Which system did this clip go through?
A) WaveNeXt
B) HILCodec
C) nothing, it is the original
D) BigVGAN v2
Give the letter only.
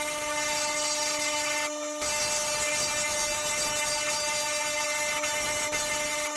C